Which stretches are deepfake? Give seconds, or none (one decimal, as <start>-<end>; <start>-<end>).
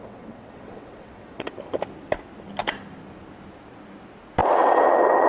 0.0-1.5; 4.4-5.3